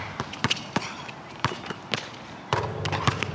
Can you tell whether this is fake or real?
fake